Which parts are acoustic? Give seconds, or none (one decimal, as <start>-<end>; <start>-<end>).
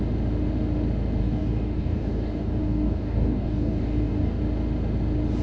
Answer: 0.0-1.2; 4.4-5.4